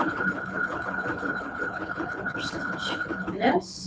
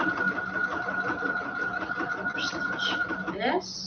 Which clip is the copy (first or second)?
first